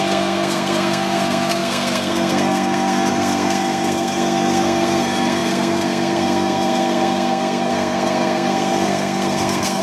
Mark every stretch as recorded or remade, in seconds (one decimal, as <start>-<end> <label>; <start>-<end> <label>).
0.0-9.8 remade